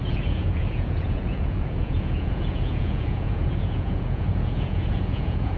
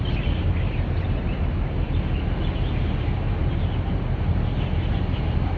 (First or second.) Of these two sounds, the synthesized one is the first